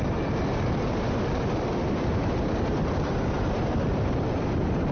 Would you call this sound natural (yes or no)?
no